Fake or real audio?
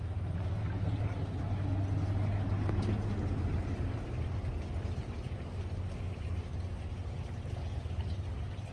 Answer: real